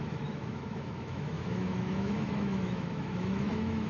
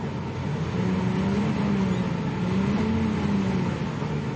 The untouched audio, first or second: second